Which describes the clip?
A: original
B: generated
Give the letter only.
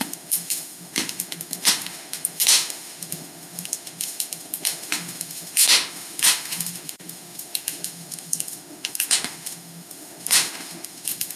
B